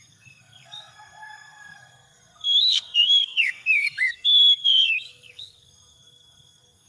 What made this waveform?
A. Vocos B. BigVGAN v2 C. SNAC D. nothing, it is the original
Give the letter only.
C